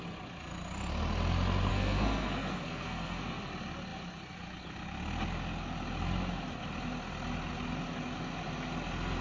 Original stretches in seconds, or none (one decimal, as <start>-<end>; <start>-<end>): 0.0-1.7; 3.2-9.2

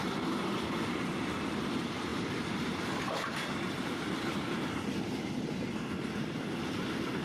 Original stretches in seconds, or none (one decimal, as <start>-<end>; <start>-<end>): 0.0-2.1; 5.2-7.2

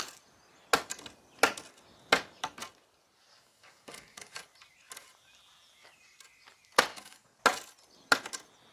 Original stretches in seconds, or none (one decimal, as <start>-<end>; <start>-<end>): 0.0-3.3; 4.4-6.9; 7.4-8.7

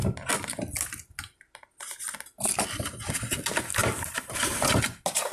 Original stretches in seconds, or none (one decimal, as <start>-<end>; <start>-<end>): 0.0-3.8; 4.8-5.3

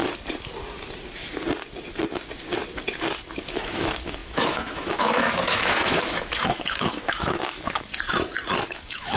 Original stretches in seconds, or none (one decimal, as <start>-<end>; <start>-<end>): 0.0-3.4; 7.9-8.7

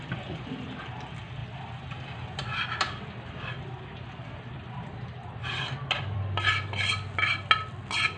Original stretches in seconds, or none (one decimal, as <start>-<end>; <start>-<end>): 0.0-1.4; 6.2-8.2